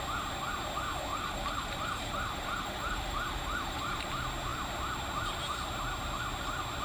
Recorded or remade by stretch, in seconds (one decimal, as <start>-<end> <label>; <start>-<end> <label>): 0.0-1.1 recorded; 1.1-4.0 remade; 4.0-6.8 recorded